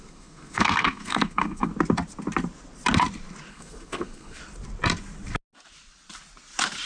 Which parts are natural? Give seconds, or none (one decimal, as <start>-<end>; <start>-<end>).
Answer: 1.7-3.5; 4.4-6.9